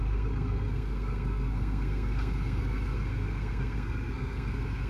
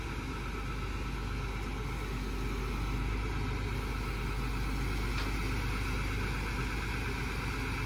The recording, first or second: second